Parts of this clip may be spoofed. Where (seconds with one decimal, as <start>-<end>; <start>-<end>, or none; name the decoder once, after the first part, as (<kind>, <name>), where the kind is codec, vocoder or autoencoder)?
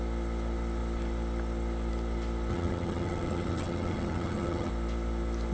2.5-4.7 (vocoder, HiFi-GAN)